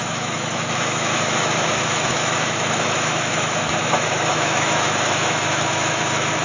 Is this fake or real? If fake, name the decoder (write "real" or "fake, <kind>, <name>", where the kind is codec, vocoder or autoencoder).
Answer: fake, autoencoder, DAC-VAE